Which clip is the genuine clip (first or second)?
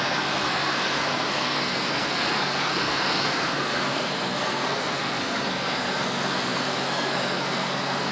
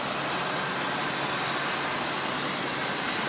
second